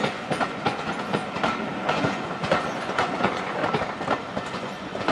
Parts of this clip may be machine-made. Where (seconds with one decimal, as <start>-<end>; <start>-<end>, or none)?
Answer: 0.0-1.2; 1.8-3.6; 4.3-5.1